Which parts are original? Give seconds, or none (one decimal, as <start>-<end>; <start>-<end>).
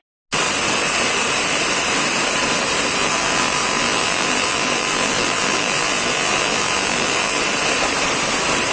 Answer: 0.0-3.0; 7.4-8.7